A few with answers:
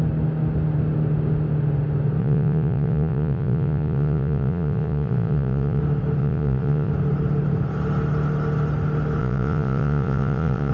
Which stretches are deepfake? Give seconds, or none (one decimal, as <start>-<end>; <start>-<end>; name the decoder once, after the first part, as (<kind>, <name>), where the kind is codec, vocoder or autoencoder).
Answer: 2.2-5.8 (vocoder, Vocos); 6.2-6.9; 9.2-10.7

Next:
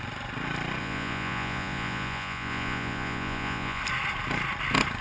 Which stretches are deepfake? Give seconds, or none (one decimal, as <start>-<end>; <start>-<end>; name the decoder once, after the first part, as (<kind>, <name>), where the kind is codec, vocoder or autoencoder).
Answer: 0.8-3.8 (vocoder, Vocos)

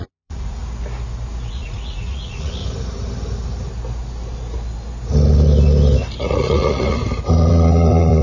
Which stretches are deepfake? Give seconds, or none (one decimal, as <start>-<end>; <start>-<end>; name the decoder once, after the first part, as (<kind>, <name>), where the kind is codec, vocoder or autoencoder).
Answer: 0.0-0.6 (vocoder, Vocos); 1.5-2.6; 6.2-7.0; 7.5-8.2

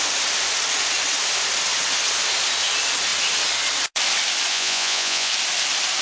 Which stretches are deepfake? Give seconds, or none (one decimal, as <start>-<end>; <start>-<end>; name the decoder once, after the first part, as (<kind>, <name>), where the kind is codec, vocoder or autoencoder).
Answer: 4.5-5.3 (vocoder, Vocos)

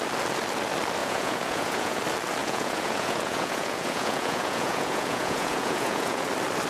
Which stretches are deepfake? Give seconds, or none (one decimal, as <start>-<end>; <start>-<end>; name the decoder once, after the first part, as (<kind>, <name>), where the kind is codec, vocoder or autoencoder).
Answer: 1.0-2.0 (vocoder, Vocos); 2.4-6.2